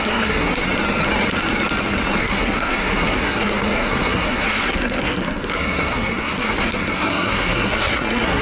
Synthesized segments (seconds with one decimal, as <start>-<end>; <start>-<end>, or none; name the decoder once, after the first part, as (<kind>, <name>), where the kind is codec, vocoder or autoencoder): 0.0-0.6 (codec, SNAC); 2.2-8.4